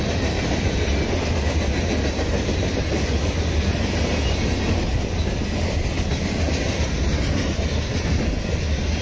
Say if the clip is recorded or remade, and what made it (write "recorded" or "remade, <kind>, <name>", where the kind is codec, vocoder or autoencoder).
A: recorded